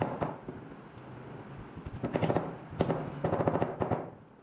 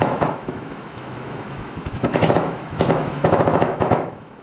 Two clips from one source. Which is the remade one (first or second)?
second